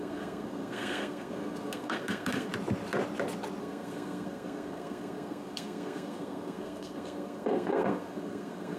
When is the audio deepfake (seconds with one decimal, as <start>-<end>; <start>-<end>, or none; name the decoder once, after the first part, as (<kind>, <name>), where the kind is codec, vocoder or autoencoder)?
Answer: 0.0-2.5 (codec, SNAC); 3.6-8.8